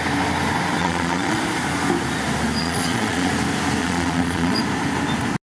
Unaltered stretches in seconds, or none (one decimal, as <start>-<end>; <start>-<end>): 0.0-0.8; 1.4-2.6; 3.3-3.8; 4.6-5.4